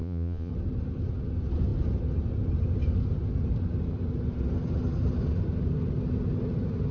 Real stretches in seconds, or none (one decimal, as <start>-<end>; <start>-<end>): 0.5-6.9